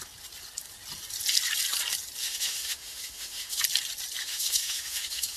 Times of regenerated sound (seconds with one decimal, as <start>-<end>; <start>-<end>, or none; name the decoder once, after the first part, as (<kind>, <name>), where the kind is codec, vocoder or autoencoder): 2.2-3.6 (autoencoder, DAC-VAE); 4.2-5.4